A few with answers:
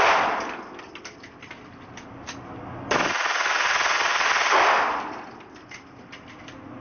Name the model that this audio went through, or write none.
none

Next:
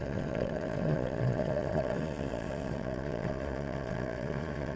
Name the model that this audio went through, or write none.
vocoder, Vocos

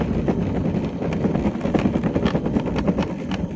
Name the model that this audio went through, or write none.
none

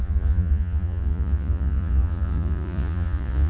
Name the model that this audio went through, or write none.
vocoder, Vocos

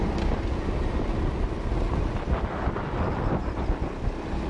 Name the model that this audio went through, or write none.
none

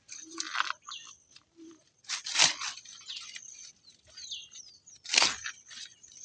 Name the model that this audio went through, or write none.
none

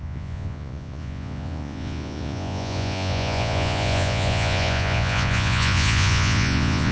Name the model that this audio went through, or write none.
vocoder, Vocos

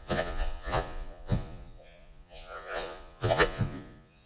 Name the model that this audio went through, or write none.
vocoder, Vocos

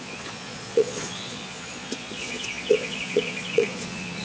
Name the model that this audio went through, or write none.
vocoder, Vocos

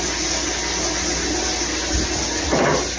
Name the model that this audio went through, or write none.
none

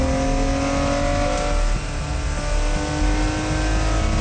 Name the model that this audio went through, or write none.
none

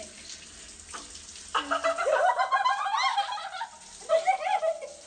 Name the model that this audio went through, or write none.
none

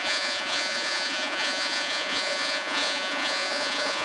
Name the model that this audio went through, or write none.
vocoder, Vocos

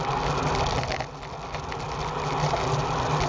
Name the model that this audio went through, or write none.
none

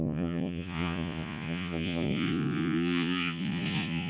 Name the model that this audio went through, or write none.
vocoder, Vocos